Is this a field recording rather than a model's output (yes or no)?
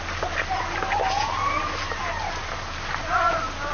yes